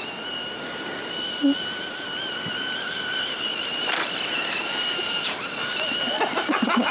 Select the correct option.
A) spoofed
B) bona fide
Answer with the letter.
A